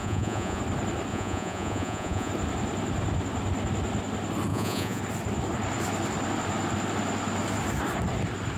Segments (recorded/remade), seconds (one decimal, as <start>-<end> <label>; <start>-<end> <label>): 0.0-0.6 remade; 0.6-1.1 recorded; 1.1-2.3 remade; 2.3-4.5 recorded; 4.5-5.0 remade; 5.0-8.6 recorded